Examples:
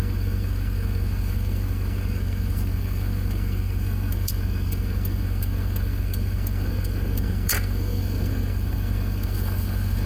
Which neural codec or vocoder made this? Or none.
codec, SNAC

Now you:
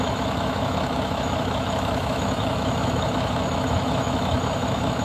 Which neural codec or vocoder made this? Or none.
autoencoder, DAC-VAE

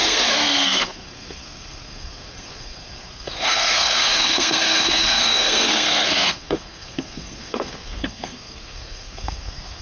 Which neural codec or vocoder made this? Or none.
codec, SNAC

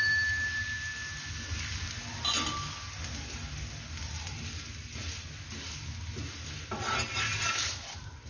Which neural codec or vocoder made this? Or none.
none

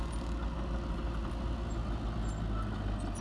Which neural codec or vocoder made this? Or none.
none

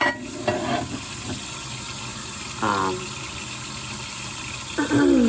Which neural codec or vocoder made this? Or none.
none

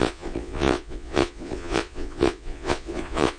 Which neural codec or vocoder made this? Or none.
vocoder, Vocos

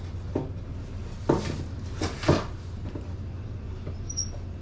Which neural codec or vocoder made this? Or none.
none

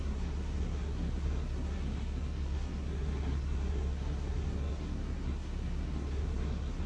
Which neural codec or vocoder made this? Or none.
codec, SNAC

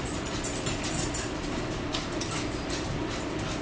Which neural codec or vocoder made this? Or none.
none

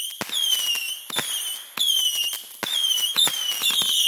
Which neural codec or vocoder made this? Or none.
none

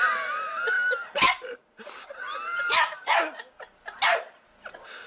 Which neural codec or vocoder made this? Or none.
none